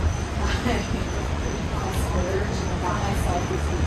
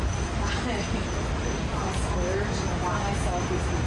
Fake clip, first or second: first